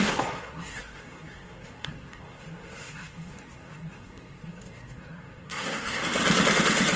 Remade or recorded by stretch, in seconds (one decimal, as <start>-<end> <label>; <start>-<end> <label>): 0.0-6.0 remade; 6.0-7.0 recorded